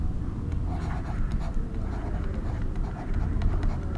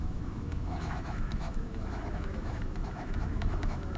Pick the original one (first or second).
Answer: first